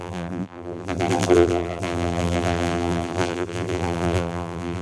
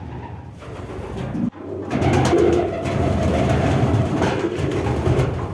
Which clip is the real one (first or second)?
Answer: second